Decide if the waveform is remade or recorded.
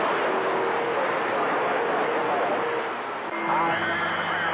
recorded